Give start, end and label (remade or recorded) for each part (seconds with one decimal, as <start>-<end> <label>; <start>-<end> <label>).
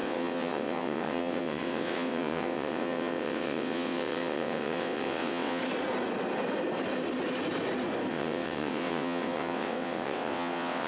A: 0.0-5.6 remade; 5.6-8.1 recorded; 8.1-10.9 remade